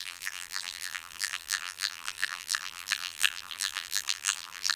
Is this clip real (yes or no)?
no